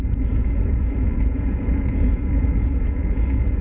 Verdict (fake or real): fake